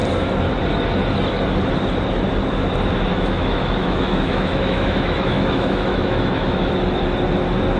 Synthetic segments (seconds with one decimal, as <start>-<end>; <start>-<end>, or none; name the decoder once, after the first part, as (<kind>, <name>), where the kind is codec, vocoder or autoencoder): 3.1-6.7 (autoencoder, DAC-VAE)